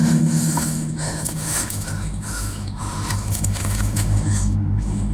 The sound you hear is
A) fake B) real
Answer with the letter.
A